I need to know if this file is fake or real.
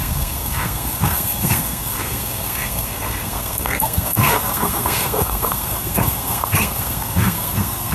fake